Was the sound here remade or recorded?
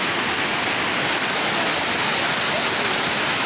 recorded